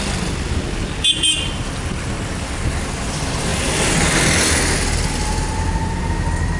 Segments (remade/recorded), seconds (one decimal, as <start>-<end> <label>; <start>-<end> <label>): 0.0-6.6 recorded